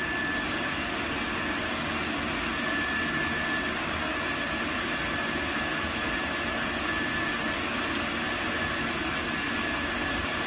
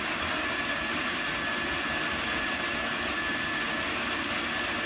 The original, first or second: first